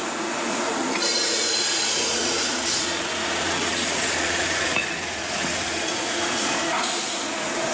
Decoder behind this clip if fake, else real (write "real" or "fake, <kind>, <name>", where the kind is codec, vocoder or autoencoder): fake, vocoder, Vocos